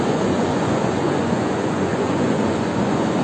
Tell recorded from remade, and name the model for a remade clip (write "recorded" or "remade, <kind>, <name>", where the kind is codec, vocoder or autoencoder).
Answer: remade, vocoder, Vocos